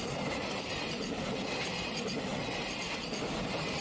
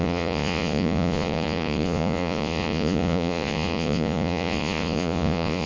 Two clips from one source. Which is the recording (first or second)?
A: first